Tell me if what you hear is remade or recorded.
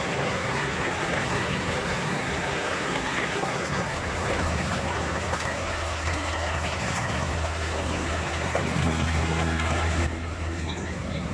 remade